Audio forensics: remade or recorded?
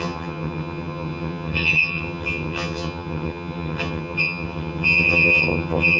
remade